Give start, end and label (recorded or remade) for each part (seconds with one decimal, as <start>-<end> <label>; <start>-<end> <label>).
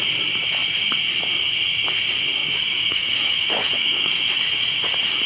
0.0-2.4 recorded; 2.4-4.4 remade; 4.4-5.3 recorded